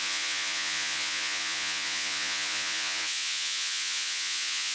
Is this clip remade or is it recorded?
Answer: remade